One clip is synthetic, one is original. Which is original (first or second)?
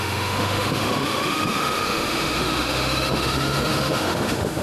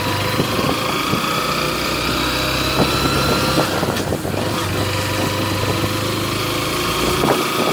second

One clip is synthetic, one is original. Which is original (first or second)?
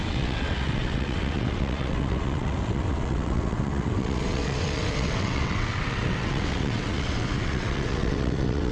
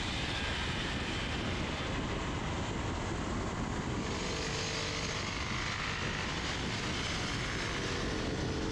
second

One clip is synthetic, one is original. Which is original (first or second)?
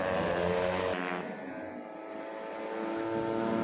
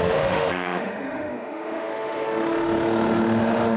first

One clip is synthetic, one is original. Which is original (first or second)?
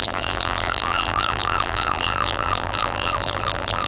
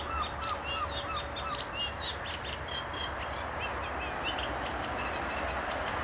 second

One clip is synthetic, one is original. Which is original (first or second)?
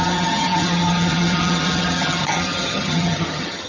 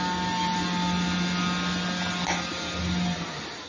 second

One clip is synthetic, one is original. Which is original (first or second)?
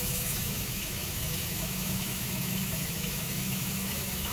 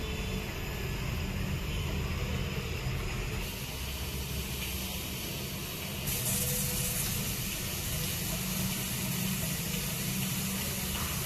second